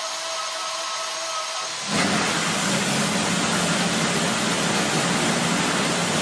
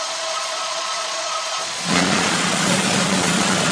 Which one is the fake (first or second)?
second